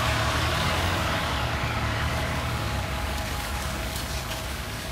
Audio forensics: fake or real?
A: fake